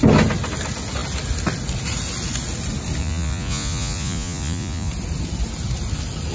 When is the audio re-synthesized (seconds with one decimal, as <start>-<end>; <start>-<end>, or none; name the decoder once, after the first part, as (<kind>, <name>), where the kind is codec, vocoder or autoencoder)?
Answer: 3.0-4.9 (vocoder, Vocos)

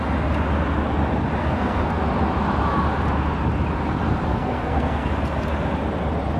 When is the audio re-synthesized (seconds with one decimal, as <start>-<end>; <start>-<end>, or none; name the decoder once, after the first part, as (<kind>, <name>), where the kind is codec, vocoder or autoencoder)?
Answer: 1.4-2.0 (codec, SNAC); 4.3-5.1